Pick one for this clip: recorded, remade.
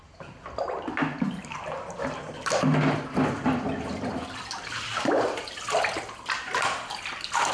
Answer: recorded